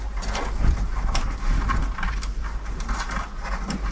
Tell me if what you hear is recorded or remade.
recorded